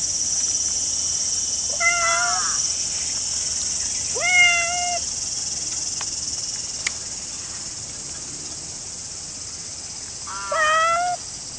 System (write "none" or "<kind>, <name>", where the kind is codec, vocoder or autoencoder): none